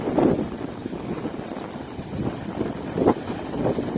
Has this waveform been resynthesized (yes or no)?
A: no